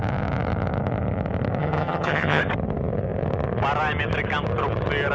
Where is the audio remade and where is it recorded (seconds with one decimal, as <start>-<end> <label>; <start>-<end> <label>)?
0.0-1.6 recorded; 1.6-2.4 remade; 2.4-5.1 recorded